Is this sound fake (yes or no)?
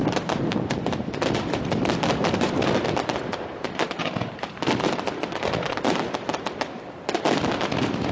yes